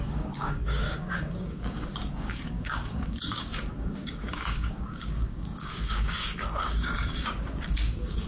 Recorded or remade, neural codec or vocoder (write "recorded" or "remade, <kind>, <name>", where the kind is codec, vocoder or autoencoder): remade, codec, DAC